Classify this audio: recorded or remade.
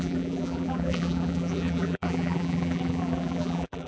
remade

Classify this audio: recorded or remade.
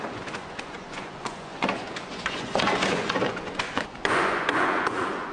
remade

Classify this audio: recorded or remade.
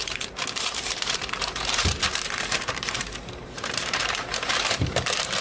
remade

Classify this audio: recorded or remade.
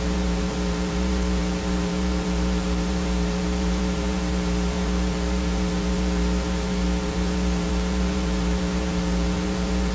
remade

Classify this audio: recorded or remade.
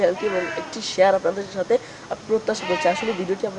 recorded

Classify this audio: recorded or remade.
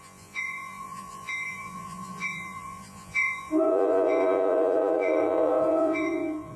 remade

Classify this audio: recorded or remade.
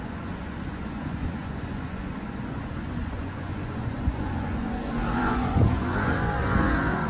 remade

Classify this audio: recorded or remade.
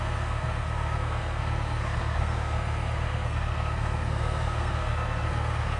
remade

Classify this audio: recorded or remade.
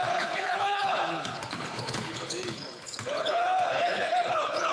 remade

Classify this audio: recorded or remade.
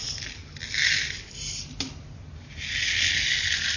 recorded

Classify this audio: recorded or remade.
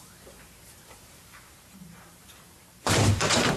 remade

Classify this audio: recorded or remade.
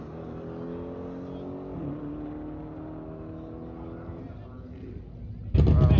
recorded